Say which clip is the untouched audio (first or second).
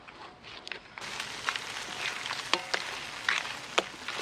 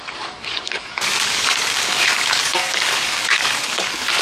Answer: first